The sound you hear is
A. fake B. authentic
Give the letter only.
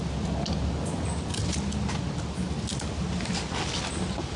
B